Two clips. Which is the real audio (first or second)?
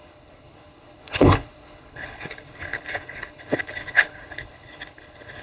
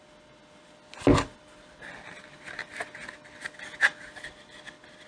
second